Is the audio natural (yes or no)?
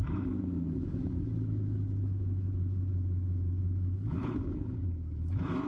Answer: no